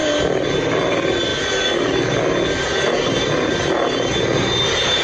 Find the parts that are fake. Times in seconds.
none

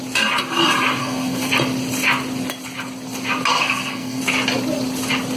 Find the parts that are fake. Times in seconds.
1.0-1.5 (codec, SNAC); 3.5-4.2

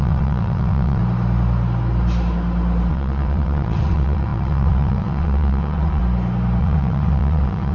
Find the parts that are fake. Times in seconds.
0.0-1.0 (vocoder, WaveNeXt); 2.9-6.0; 6.6-7.7

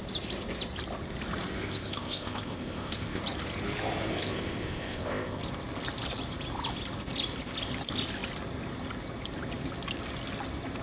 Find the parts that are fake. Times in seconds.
1.6-3.2 (codec, ZipCodec); 4.1-5.4

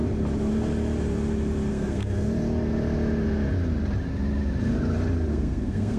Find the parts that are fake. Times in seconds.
1.7-2.3 (codec, SNAC); 5.3-6.0